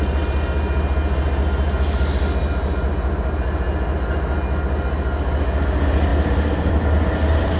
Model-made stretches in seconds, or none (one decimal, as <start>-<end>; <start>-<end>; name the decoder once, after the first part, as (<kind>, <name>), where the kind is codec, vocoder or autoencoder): none